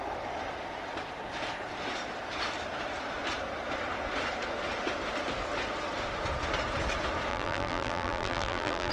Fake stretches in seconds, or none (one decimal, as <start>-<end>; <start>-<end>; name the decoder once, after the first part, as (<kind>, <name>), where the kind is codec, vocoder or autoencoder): 7.3-8.9 (vocoder, BigVGAN v2)